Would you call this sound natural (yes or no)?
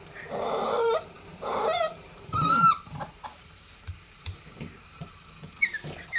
no